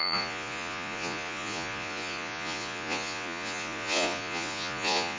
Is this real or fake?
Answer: fake